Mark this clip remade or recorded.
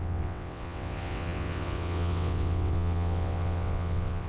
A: remade